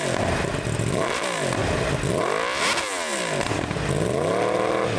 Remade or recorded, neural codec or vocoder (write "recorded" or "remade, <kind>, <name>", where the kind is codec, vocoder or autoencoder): recorded